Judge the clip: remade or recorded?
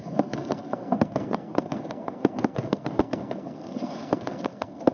remade